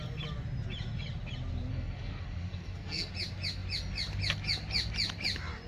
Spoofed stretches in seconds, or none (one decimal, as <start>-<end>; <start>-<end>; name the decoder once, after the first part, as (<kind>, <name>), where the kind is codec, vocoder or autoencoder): 1.7-3.1 (codec, SNAC)